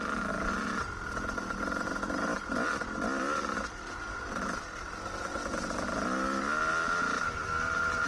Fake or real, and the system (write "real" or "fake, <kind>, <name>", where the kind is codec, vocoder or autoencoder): real